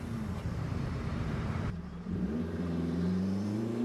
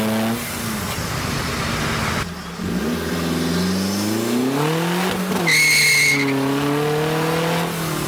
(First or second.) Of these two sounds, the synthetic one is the first